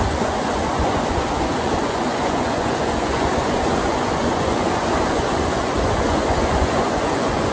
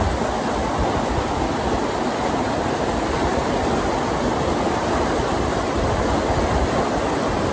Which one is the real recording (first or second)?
second